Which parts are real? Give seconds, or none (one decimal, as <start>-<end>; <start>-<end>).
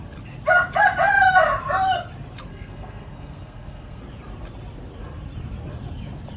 0.0-2.5; 4.0-6.4